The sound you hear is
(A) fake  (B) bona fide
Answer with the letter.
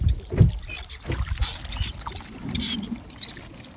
B